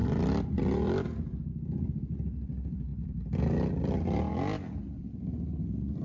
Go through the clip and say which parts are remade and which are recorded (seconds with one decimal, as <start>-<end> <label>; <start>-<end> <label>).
0.0-6.0 recorded